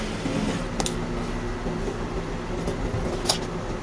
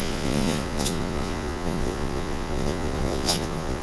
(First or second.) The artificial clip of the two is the second